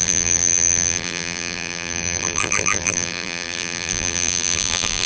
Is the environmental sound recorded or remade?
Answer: remade